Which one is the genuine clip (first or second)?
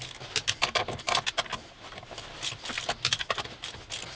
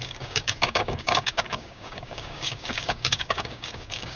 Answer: first